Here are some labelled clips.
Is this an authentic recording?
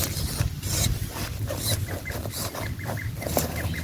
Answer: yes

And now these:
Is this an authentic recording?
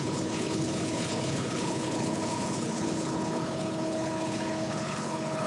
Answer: no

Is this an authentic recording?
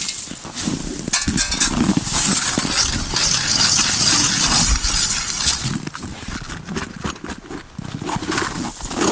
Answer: yes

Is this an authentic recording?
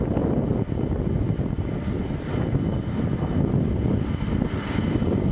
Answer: yes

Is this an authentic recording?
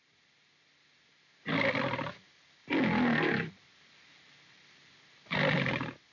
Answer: yes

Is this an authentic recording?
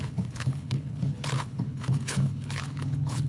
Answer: no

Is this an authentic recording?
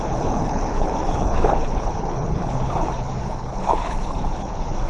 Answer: no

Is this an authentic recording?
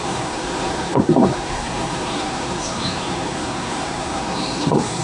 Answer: no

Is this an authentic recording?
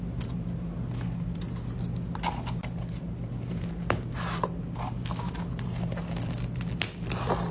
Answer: yes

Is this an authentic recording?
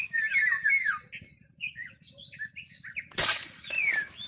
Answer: yes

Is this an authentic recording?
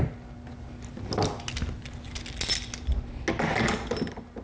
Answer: yes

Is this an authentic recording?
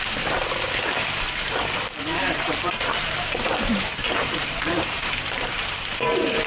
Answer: no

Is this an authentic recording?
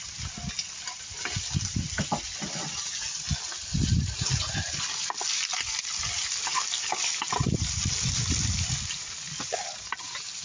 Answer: yes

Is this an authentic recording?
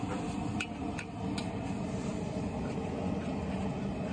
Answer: yes